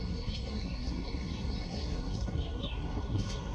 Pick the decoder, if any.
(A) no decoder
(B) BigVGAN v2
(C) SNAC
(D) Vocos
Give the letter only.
C